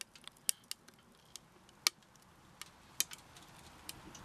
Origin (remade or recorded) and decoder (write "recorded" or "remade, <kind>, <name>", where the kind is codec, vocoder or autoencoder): recorded